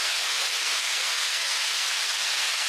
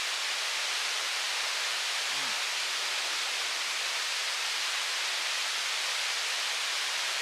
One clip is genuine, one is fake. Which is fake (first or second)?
first